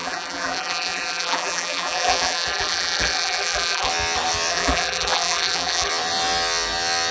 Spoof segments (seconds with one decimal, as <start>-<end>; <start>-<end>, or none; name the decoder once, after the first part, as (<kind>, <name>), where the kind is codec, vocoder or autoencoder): 0.0-3.9 (vocoder, BigVGAN v2); 4.5-5.9